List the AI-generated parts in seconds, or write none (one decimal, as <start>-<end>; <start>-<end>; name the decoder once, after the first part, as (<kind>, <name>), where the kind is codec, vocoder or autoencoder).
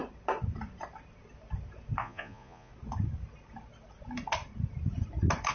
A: 2.0-2.7 (vocoder, Vocos)